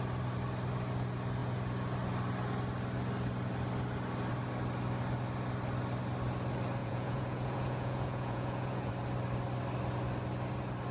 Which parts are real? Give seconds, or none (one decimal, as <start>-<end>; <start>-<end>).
0.0-6.8; 8.9-10.9